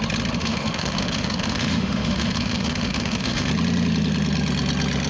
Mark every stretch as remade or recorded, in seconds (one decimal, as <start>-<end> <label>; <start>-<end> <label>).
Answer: 0.0-0.4 recorded; 0.4-3.5 remade; 3.5-5.1 recorded